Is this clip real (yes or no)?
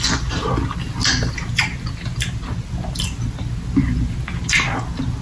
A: yes